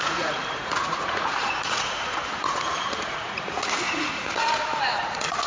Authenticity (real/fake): fake